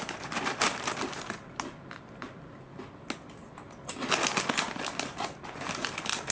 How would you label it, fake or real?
real